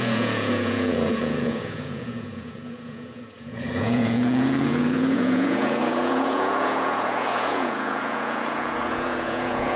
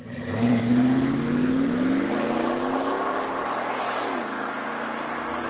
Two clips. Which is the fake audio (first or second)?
first